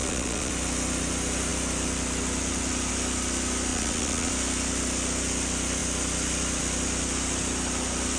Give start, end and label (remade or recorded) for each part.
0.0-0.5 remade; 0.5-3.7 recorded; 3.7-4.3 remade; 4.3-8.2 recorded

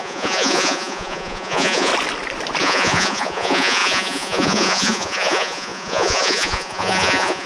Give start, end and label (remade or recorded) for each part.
0.0-1.9 remade; 1.9-2.6 recorded; 2.6-7.5 remade

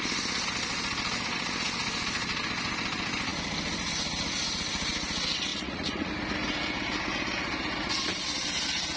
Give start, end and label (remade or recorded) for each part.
0.0-5.5 recorded; 5.5-6.1 remade; 6.1-9.0 recorded

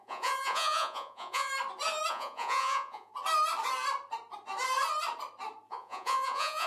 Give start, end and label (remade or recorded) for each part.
0.0-1.5 remade; 1.5-2.1 recorded; 2.1-3.1 remade; 3.1-5.7 recorded; 5.7-6.7 remade